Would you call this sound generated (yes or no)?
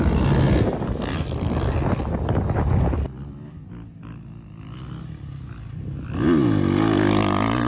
no